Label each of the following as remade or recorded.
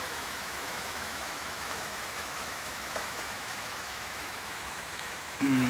remade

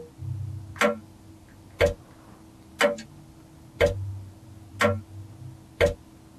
recorded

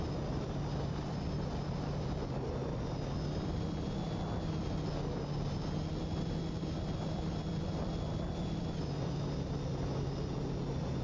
recorded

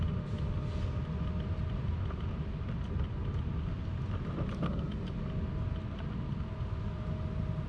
recorded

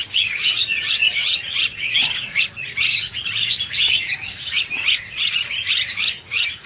remade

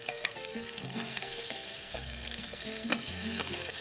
remade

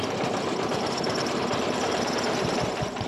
remade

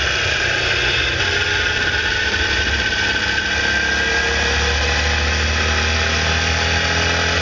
recorded